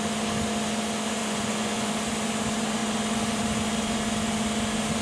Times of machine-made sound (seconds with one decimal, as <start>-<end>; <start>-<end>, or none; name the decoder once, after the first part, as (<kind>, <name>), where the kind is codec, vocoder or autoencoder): 1.2-1.9 (vocoder, Vocos)